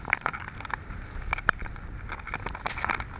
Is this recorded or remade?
recorded